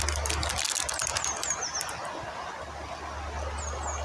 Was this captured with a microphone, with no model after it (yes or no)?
yes